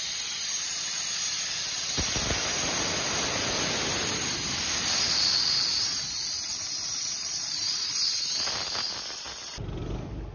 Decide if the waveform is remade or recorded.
recorded